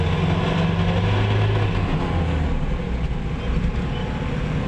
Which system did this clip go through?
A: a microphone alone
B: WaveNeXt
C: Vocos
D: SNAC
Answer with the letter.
A